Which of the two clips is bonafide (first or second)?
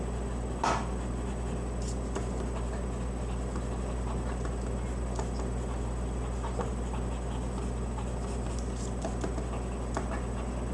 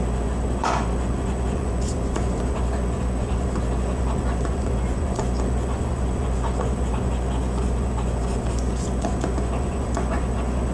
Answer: first